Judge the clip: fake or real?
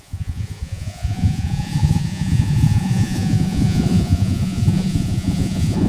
fake